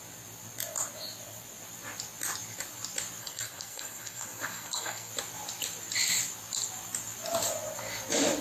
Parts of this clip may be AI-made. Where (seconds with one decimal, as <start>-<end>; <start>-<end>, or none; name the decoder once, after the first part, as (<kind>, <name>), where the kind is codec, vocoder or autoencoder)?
3.2-5.1 (codec, SNAC)